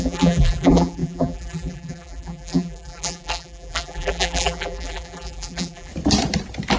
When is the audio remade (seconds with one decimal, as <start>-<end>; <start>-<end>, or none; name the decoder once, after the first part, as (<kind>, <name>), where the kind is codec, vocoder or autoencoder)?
0.0-5.9 (vocoder, BigVGAN v2)

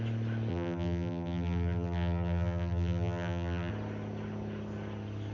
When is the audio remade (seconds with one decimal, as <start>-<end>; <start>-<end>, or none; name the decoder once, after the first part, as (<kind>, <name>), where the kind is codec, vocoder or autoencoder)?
0.5-3.7 (vocoder, BigVGAN v2)